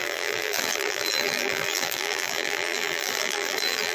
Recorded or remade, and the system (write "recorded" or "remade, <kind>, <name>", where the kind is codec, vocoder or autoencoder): remade, vocoder, BigVGAN v2